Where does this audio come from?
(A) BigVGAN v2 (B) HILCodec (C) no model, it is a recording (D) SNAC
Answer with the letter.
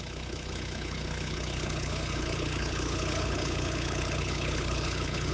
B